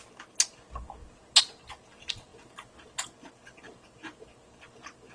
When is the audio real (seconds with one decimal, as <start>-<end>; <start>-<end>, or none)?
0.0-5.1

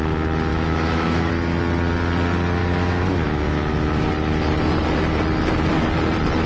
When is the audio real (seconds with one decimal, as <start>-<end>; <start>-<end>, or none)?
0.0-0.5; 1.3-2.6; 4.1-6.5

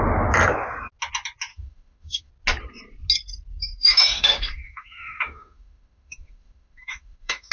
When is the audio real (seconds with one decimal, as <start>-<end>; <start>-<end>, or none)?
0.0-1.5; 2.3-3.7

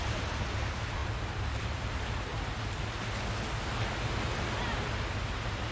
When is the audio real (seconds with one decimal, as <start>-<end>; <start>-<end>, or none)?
1.0-1.6; 2.3-5.7

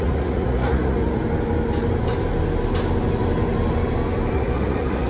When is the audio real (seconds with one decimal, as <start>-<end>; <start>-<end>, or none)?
1.2-4.3

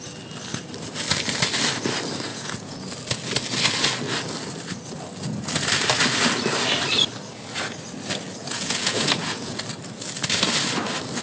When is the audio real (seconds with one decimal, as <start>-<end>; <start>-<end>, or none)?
0.0-2.3; 2.9-8.4; 9.6-11.2

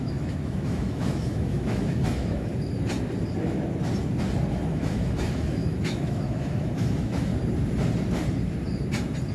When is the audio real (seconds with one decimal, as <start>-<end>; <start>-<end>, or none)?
2.5-4.5; 7.3-9.3